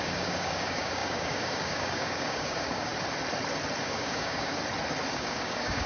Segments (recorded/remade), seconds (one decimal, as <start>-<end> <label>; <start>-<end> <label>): 0.0-2.9 remade; 2.9-3.8 recorded; 3.8-4.5 remade; 4.5-5.1 recorded; 5.1-5.9 remade

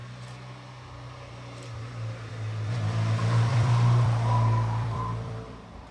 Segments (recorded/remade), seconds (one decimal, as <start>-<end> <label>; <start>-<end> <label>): 0.0-3.5 recorded; 3.5-5.9 remade

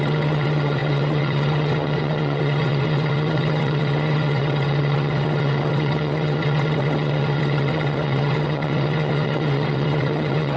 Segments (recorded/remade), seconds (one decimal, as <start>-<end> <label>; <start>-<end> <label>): 0.0-10.6 remade

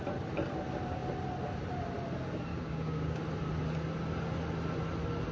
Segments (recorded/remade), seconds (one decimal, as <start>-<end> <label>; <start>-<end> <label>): 0.0-2.5 recorded; 2.5-3.2 remade; 3.2-5.3 recorded

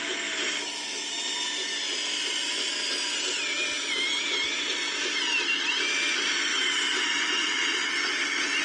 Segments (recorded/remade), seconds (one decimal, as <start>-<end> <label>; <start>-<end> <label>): 0.0-6.5 recorded; 6.5-7.8 remade; 7.8-8.6 recorded

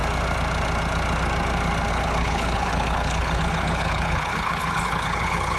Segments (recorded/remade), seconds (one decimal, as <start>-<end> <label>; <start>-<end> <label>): 0.0-1.9 recorded; 1.9-5.6 remade

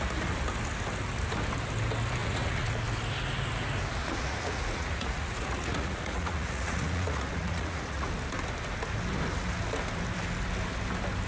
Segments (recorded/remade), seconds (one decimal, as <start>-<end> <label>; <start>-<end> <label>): 0.0-2.2 recorded; 2.2-2.7 remade; 2.7-4.0 recorded; 4.0-8.1 remade; 8.1-11.3 recorded